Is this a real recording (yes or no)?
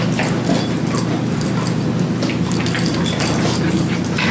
yes